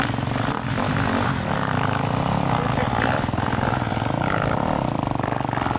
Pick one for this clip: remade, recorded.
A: recorded